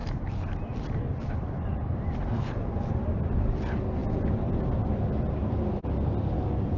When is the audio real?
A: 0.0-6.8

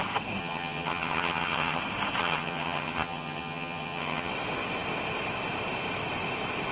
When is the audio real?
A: 0.0-0.4; 1.8-2.2; 4.3-6.7

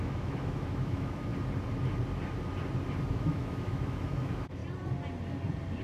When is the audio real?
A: 1.3-3.1; 4.6-5.8

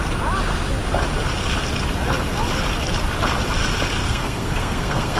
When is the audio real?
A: 0.0-4.0